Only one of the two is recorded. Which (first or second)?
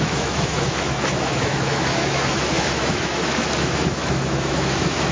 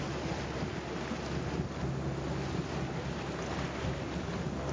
second